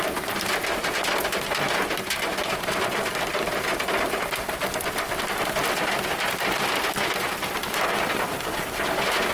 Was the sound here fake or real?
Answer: real